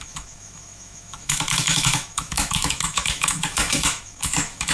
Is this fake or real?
fake